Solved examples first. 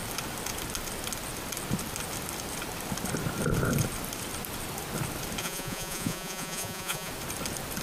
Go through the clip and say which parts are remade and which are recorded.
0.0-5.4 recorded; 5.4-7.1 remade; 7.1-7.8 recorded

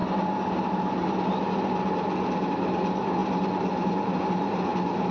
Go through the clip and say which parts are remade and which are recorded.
0.0-5.1 recorded